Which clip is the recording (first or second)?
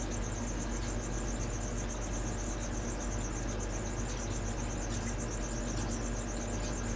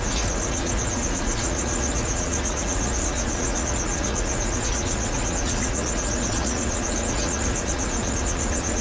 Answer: first